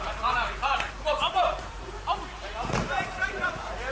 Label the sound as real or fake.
fake